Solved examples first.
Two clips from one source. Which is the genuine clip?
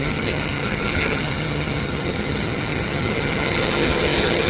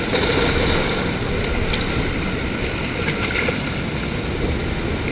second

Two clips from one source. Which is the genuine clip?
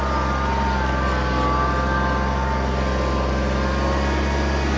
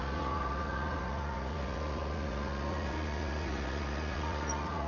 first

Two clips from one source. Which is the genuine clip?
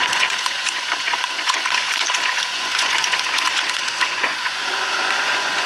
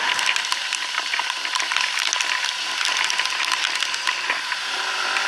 second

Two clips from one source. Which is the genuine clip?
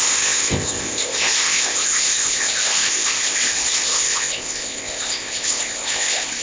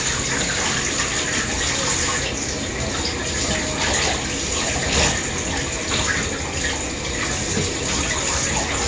second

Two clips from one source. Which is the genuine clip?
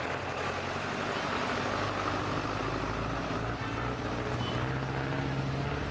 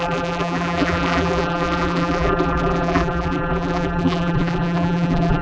first